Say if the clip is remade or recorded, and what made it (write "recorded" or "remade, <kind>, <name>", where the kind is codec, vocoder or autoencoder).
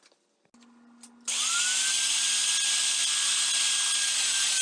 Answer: recorded